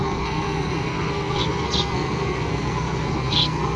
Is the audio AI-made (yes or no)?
yes